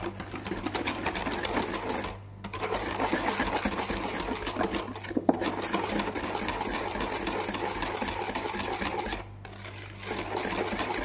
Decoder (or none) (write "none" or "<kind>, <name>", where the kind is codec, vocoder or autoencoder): none